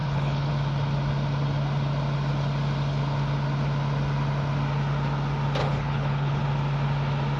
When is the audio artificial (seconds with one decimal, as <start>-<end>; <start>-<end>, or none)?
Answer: 0.0-0.5; 5.6-6.4